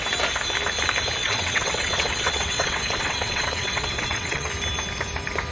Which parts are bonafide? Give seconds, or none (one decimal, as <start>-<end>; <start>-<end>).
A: 0.0-1.2; 4.5-5.5